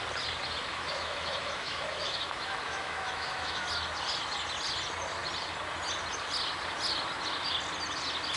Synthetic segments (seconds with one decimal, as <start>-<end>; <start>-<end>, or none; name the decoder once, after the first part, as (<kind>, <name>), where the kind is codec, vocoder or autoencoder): 0.7-3.6 (autoencoder, DAC-VAE)